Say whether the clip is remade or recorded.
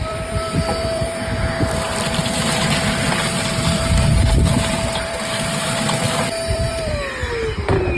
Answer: remade